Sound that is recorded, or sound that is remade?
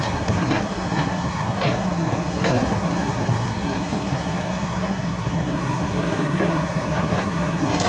remade